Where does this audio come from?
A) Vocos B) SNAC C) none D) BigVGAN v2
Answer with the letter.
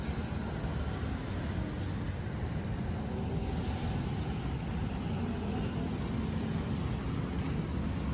C